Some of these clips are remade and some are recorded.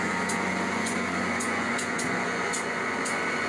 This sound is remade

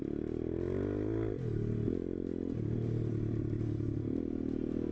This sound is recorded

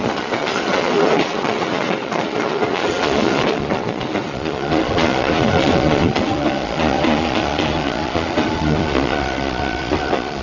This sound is remade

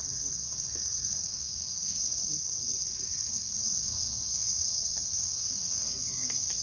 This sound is remade